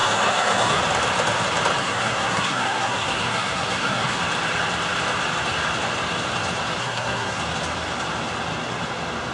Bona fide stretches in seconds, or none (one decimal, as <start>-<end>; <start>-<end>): 0.8-1.8; 4.2-6.8; 7.4-9.3